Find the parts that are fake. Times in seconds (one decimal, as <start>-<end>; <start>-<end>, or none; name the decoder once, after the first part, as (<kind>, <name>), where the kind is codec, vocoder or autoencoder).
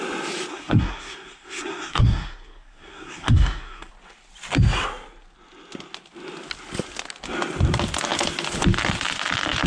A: 0.5-3.9 (codec, SNAC)